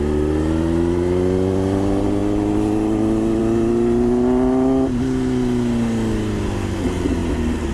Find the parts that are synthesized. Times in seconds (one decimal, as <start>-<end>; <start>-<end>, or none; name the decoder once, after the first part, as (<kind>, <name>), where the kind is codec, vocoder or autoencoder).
none